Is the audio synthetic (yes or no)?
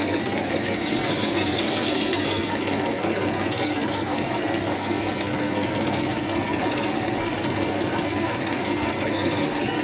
yes